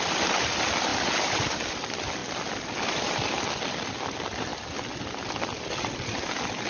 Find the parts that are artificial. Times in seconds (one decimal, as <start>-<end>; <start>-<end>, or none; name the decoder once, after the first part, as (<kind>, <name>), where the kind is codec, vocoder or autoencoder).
0.0-2.2 (vocoder, BigVGAN v2); 2.8-4.5; 5.8-6.7